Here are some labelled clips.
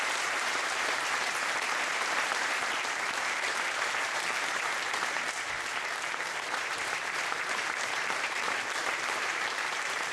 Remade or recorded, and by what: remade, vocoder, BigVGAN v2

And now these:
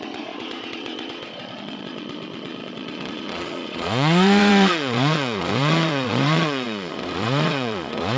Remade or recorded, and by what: remade, vocoder, Vocos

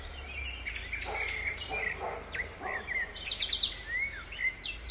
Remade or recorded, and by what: recorded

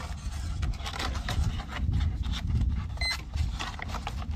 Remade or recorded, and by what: recorded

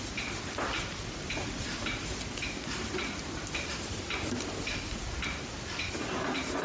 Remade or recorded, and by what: recorded